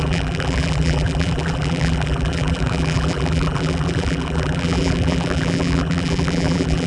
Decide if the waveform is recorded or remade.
remade